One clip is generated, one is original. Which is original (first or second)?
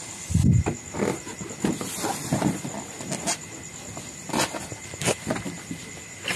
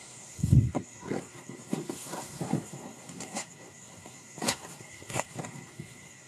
first